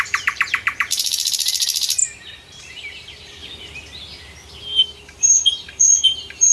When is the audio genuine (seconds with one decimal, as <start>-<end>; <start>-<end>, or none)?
2.0-2.6; 3.4-4.8